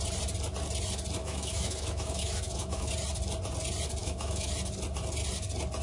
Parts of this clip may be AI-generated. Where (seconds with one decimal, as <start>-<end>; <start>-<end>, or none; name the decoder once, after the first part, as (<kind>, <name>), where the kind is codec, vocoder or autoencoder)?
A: 1.2-2.9 (autoencoder, DAC-VAE); 4.0-4.5